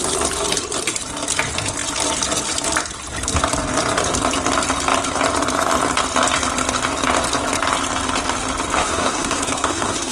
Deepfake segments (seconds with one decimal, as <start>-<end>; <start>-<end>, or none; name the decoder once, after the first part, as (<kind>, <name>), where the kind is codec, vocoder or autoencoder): 8.8-10.1 (codec, SNAC)